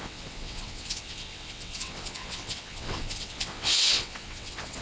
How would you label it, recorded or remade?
remade